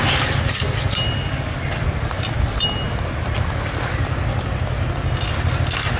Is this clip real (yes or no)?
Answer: yes